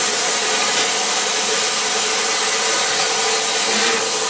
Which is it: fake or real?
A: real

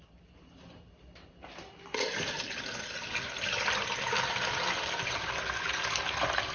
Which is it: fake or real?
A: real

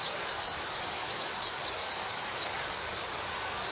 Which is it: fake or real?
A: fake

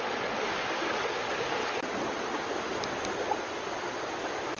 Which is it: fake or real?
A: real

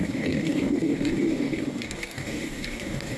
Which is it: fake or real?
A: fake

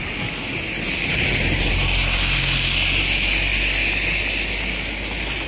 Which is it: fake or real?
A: real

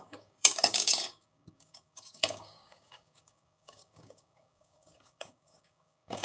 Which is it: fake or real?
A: fake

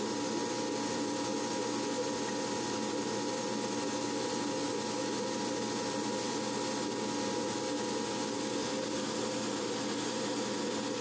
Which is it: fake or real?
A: real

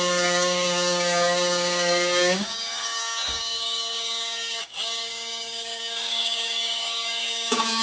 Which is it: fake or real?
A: fake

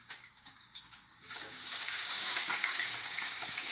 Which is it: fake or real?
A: fake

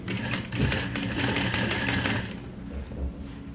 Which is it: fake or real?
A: real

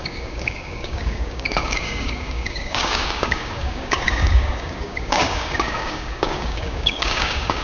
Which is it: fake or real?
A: fake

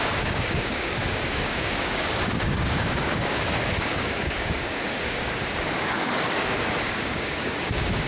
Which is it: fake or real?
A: fake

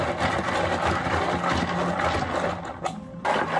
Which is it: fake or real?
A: real